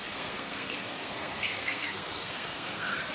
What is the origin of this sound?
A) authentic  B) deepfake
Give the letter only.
B